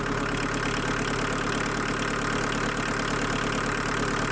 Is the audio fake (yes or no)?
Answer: no